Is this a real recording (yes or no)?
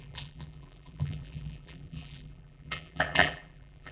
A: no